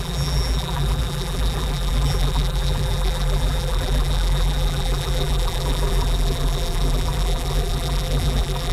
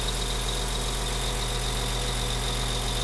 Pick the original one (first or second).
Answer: second